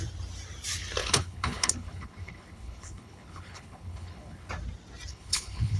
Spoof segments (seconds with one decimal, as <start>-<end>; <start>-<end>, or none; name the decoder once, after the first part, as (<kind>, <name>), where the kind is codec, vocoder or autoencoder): 1.0-4.5 (codec, HILCodec); 5.1-5.8